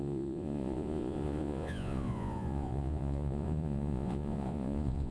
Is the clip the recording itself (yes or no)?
no